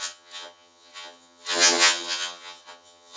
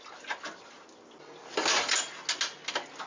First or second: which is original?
second